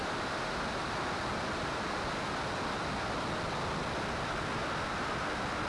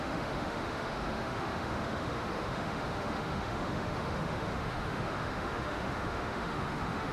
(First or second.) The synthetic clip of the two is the second